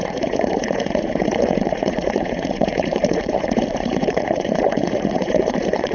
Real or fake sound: fake